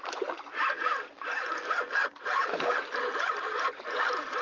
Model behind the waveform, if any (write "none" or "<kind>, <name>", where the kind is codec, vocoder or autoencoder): vocoder, BigVGAN v2